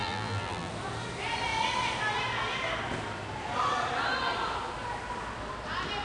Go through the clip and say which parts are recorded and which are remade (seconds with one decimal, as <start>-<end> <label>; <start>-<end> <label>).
0.0-0.7 remade; 0.7-6.0 recorded